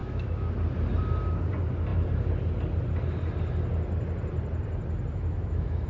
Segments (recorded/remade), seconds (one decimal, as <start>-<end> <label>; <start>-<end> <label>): 0.0-0.5 remade; 0.5-5.1 recorded; 5.1-5.9 remade